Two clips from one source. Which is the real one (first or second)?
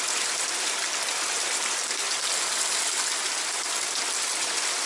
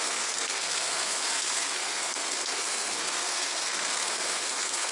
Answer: first